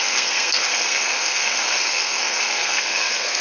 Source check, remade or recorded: remade